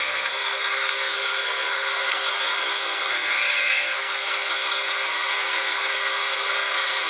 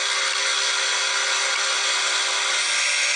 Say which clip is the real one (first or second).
second